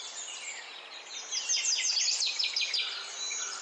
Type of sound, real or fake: real